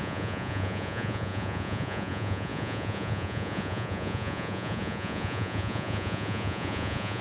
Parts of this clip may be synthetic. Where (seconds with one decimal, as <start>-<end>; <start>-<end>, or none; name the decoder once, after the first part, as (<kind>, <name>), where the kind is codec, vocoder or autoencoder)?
0.0-7.2 (vocoder, Vocos)